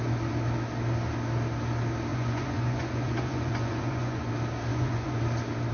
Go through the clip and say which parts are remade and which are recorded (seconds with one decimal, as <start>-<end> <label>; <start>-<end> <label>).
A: 0.0-2.1 recorded; 2.1-4.3 remade; 4.3-4.7 recorded; 4.7-5.2 remade; 5.2-5.7 recorded

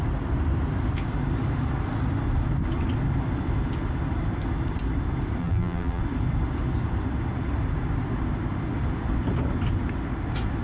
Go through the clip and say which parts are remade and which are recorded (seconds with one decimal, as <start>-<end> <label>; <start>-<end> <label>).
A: 0.0-5.4 recorded; 5.4-6.0 remade; 6.0-10.6 recorded

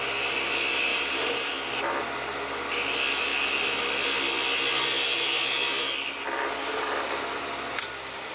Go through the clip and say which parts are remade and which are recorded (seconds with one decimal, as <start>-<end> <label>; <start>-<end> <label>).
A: 0.0-0.9 recorded; 0.9-1.5 remade; 1.5-8.3 recorded

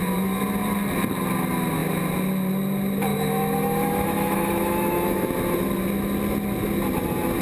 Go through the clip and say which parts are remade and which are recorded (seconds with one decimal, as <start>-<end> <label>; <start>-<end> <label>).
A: 0.0-3.1 recorded; 3.1-5.3 remade; 5.3-7.4 recorded

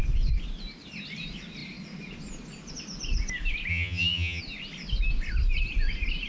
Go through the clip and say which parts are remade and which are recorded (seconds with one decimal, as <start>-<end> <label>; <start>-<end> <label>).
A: 0.0-3.7 recorded; 3.7-4.4 remade; 4.4-6.3 recorded